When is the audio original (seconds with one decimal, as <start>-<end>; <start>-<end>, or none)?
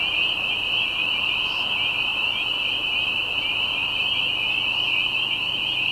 0.0-5.9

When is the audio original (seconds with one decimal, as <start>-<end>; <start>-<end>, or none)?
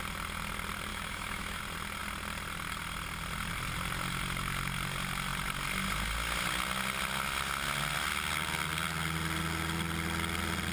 0.0-0.9; 1.6-10.7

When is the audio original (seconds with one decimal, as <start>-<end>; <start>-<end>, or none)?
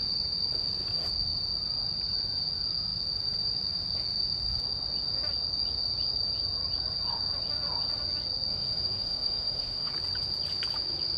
0.0-8.5; 9.9-11.2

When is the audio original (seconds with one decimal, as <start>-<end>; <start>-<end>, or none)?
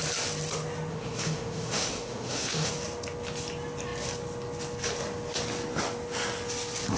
0.0-0.9; 2.7-7.0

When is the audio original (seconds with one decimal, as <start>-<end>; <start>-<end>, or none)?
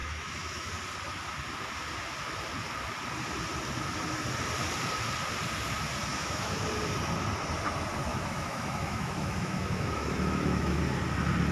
0.7-6.1; 6.6-8.1; 10.8-11.5